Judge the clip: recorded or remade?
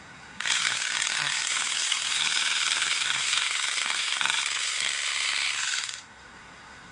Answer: remade